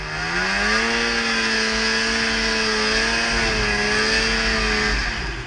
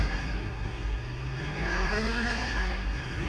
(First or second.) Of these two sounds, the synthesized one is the second